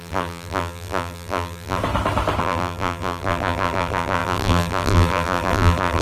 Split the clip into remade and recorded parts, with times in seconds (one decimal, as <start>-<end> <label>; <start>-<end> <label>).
0.0-1.8 remade; 1.8-2.4 recorded; 2.4-6.0 remade